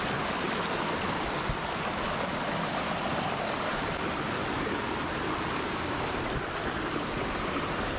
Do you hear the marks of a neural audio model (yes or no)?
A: no